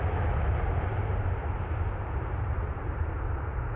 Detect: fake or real real